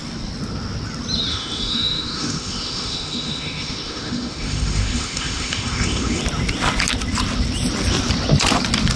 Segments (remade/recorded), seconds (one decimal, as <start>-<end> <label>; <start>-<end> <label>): 0.0-1.3 recorded; 1.3-6.2 remade; 6.2-9.0 recorded